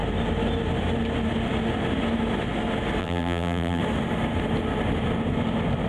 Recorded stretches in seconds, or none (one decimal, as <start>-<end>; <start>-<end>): 0.0-3.0; 3.8-5.9